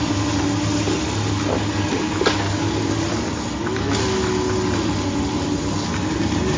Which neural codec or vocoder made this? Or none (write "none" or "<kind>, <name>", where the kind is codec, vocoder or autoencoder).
none